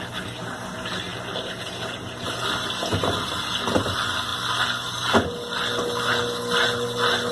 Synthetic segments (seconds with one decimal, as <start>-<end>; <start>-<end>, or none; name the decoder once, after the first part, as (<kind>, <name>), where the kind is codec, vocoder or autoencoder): none